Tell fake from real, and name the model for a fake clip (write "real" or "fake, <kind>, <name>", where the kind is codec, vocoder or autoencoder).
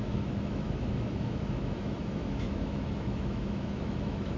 fake, autoencoder, DAC-VAE